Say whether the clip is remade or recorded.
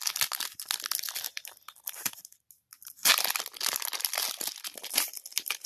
recorded